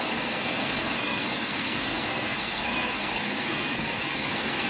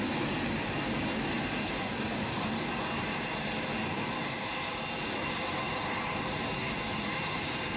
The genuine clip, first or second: second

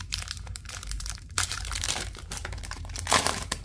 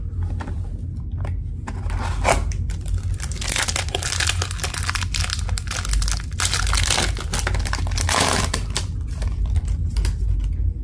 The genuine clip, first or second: second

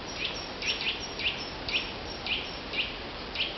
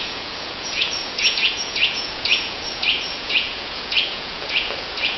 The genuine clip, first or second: first